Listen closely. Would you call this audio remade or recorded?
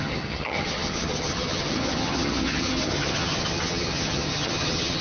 remade